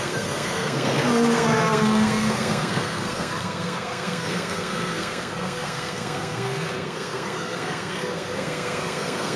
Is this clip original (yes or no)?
no